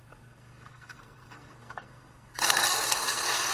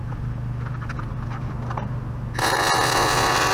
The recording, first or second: second